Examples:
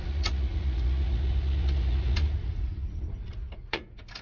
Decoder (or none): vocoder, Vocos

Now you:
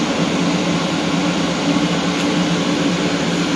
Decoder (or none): none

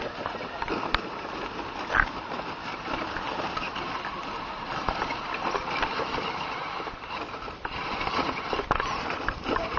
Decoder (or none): none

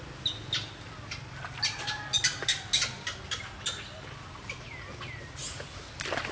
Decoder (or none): none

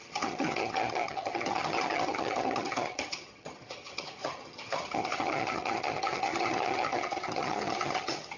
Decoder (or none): vocoder, HiFi-GAN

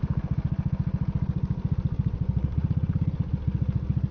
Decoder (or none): none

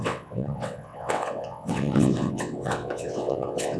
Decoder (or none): vocoder, WaveNeXt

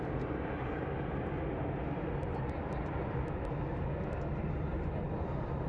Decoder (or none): none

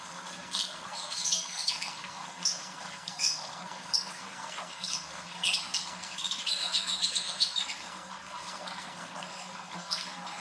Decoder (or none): codec, SNAC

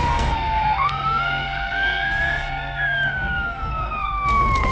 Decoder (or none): codec, SNAC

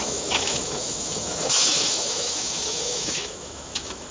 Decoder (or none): autoencoder, DAC-VAE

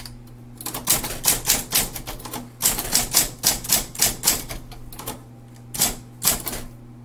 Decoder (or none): none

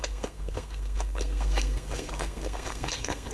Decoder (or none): codec, SNAC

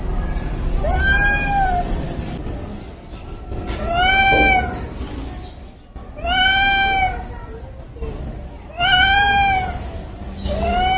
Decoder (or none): none